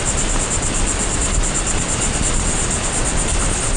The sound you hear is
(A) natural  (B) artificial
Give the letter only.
A